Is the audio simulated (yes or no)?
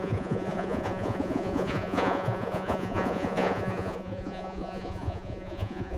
yes